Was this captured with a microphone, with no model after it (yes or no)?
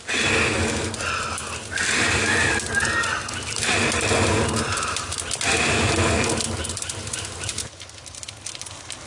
yes